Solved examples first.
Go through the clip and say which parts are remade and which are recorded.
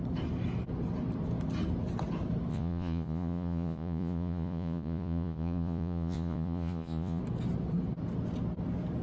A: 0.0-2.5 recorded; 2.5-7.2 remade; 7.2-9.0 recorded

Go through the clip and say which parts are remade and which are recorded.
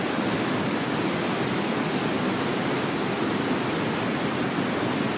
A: 0.0-5.2 recorded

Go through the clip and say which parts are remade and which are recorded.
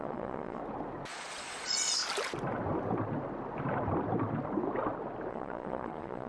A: 0.0-0.6 remade; 0.6-1.1 recorded; 1.1-2.0 remade; 2.0-5.3 recorded; 5.3-6.3 remade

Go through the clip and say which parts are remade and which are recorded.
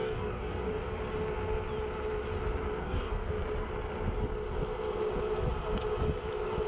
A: 0.0-1.0 remade; 1.0-2.8 recorded; 2.8-3.3 remade; 3.3-6.7 recorded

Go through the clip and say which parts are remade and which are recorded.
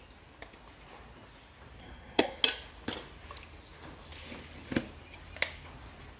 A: 0.0-1.8 recorded; 1.8-2.4 remade; 2.4-6.2 recorded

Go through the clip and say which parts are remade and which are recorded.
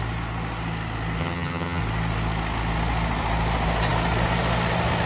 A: 0.0-1.2 recorded; 1.2-1.8 remade; 1.8-5.1 recorded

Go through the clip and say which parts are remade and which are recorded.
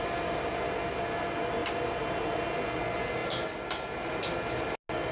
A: 0.0-5.1 recorded